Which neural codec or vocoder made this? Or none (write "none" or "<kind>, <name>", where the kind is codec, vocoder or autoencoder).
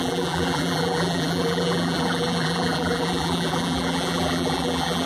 vocoder, BigVGAN v2